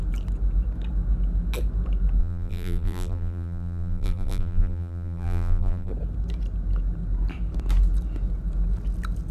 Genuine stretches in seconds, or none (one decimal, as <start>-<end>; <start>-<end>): 0.0-2.2; 5.9-9.3